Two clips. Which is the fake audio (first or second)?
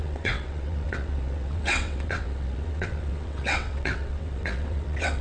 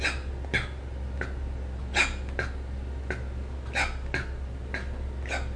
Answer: first